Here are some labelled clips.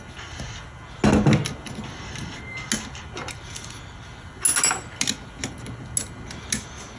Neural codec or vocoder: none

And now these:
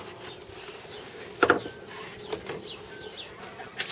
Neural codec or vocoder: none